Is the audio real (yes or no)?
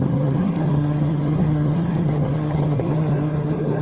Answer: no